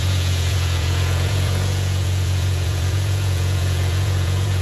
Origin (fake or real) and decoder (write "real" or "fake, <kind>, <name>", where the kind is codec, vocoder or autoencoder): fake, vocoder, Vocos